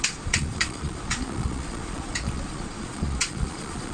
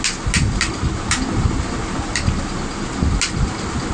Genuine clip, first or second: second